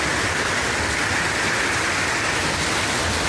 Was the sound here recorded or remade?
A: recorded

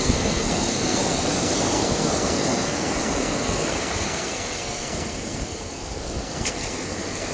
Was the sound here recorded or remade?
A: remade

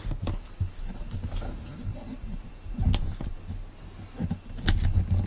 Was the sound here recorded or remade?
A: recorded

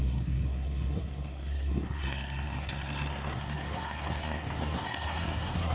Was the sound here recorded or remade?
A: remade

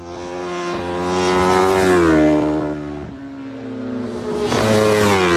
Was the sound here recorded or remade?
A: recorded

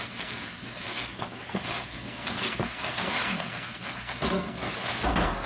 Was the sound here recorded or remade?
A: remade